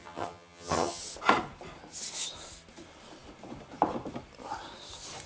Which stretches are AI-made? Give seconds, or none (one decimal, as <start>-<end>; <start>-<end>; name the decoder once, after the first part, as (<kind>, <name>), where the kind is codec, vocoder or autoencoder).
0.0-1.0 (vocoder, HiFi-GAN)